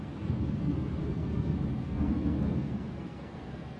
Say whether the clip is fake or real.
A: fake